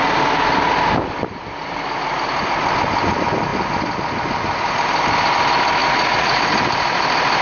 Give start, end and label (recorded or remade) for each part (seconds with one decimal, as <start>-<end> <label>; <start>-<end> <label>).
0.0-5.8 recorded; 5.8-6.4 remade; 6.4-7.4 recorded